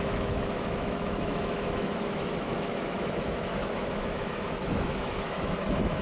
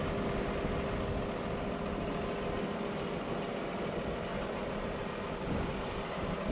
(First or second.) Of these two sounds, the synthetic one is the first